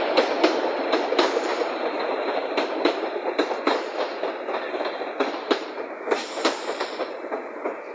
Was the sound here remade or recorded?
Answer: remade